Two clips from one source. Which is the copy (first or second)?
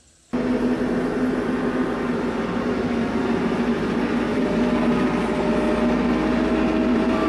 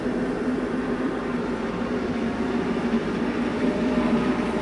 second